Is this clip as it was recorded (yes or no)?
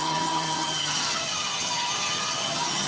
no